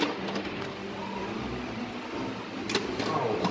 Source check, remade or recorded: recorded